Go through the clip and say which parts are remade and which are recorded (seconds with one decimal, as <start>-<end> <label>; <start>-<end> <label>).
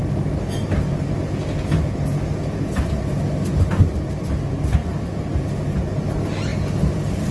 0.0-7.3 recorded